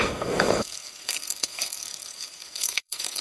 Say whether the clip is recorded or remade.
remade